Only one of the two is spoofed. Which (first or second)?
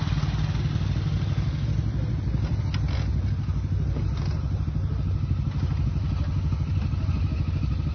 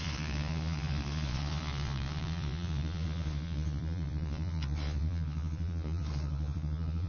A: second